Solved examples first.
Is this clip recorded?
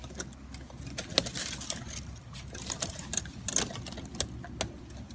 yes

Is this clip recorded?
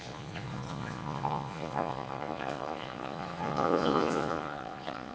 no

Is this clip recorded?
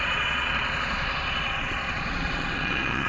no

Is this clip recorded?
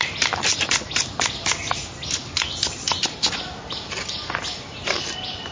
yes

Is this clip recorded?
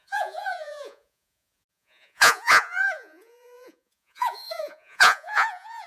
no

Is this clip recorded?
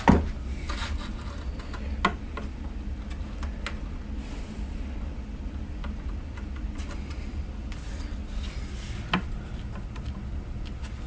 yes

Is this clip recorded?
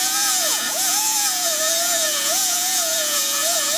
no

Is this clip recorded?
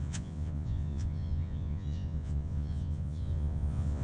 no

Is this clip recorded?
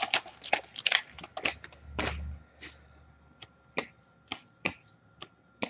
yes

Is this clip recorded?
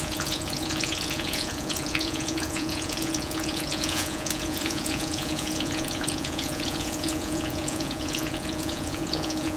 no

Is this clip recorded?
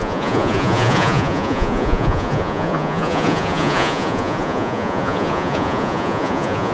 no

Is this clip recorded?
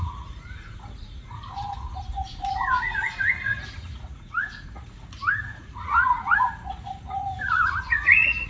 no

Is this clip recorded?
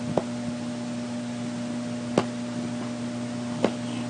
yes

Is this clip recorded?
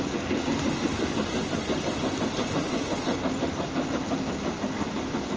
yes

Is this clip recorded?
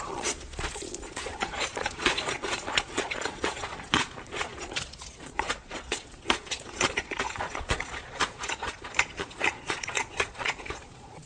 no